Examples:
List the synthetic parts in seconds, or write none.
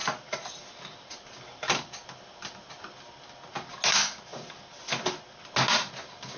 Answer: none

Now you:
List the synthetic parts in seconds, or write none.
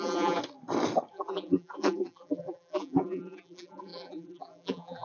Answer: 0.0-0.4 (vocoder, BigVGAN v2); 1.1-5.0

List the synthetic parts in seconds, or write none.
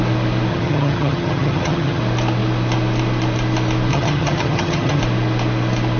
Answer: 0.5-2.0 (vocoder, HiFi-GAN); 3.9-5.0